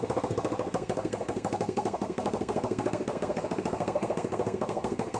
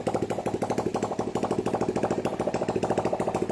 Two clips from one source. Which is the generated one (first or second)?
first